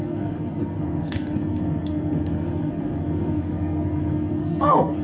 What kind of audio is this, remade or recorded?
remade